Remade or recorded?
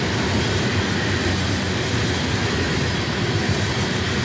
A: recorded